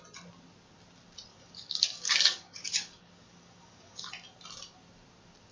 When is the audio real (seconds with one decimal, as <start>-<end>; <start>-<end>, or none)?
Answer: 0.0-1.3; 4.1-5.5